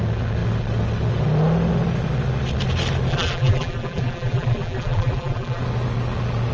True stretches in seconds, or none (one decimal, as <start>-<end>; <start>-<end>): 0.0-3.1; 5.6-6.5